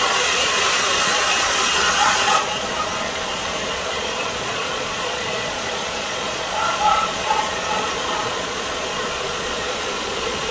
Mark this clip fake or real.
fake